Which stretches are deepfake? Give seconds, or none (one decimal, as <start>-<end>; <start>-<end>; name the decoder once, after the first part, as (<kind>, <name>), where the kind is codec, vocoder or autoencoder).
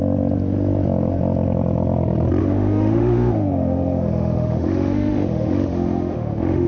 2.4-6.7 (autoencoder, DAC-VAE)